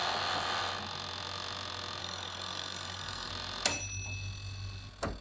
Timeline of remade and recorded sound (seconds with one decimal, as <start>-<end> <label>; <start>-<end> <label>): 0.0-2.0 recorded; 2.0-3.3 remade; 3.3-5.2 recorded